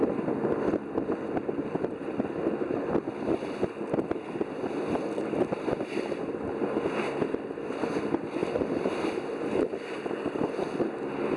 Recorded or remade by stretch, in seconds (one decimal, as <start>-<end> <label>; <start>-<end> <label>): 0.0-11.4 recorded